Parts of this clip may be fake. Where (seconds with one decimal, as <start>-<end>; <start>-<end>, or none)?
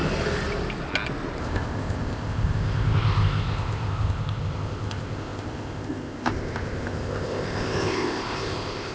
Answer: 1.4-8.9